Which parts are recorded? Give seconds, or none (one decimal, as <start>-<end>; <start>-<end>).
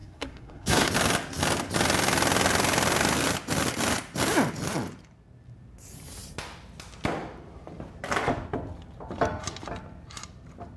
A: 0.9-10.8